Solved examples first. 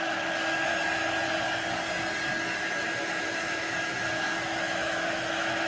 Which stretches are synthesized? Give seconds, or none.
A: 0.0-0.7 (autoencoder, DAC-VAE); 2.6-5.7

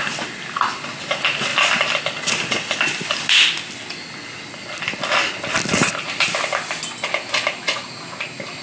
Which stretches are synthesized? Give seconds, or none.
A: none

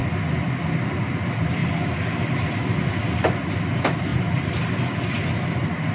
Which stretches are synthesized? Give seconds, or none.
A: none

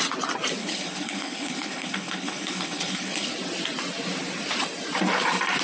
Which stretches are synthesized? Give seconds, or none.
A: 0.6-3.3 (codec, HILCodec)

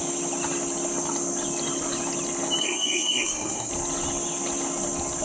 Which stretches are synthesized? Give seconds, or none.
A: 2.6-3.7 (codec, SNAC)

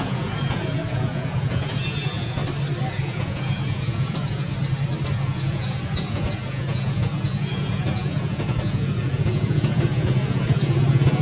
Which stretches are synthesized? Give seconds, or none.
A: 0.0-2.4 (vocoder, Vocos); 2.9-4.5; 5.1-11.2